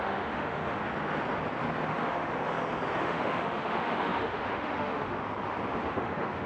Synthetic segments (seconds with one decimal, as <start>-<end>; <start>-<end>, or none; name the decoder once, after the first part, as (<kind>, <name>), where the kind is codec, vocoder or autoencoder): 0.0-0.8 (autoencoder, DAC-VAE); 1.9-2.3; 3.0-5.2; 5.8-6.5